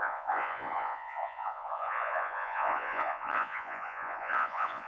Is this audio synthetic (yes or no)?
yes